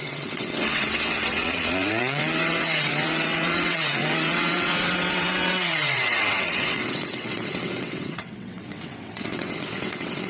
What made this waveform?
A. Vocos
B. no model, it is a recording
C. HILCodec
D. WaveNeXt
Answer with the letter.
D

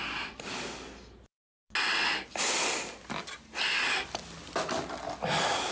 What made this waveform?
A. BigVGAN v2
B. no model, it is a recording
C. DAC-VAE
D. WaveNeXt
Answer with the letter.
B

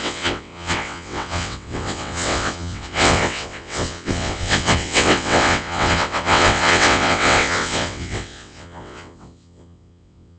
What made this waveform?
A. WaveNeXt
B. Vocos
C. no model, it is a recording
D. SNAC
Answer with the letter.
A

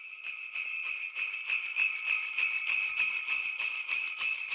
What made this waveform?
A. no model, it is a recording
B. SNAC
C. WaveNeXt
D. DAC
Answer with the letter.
A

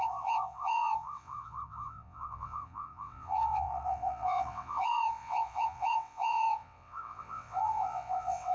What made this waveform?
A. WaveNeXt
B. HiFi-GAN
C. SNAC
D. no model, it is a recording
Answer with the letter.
A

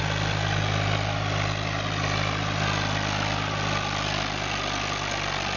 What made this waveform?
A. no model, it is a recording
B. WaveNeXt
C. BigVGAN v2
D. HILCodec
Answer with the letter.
A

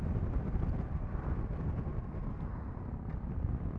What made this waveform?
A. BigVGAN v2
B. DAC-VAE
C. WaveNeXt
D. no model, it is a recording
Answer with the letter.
D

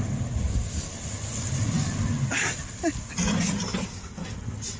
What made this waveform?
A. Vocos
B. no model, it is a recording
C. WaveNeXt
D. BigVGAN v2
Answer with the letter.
B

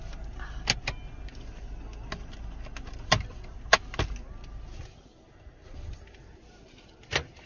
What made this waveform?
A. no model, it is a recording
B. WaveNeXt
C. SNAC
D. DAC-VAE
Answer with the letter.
A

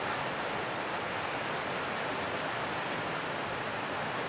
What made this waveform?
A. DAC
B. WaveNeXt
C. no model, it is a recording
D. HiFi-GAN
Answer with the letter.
C